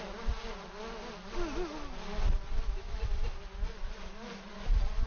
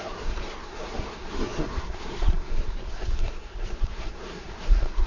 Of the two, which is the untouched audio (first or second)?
first